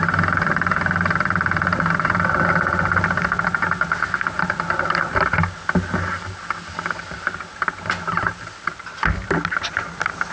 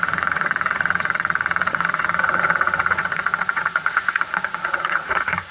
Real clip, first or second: first